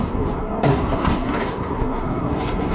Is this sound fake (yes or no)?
yes